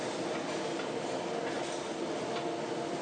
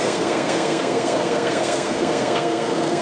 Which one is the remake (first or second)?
second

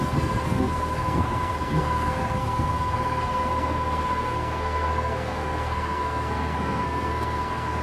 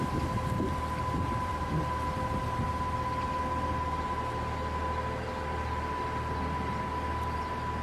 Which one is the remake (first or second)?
first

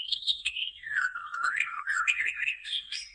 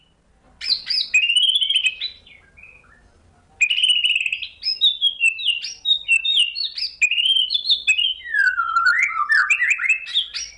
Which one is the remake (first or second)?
first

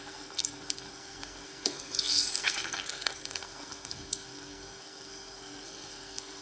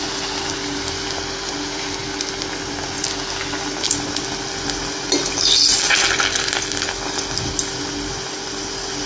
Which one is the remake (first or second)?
first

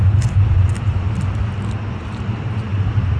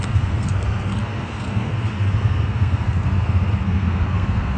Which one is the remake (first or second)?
second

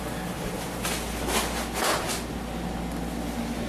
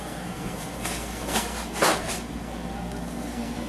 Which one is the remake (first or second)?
second